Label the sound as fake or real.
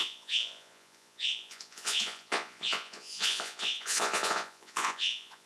fake